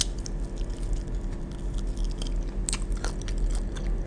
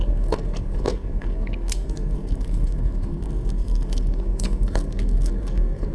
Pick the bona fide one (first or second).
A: first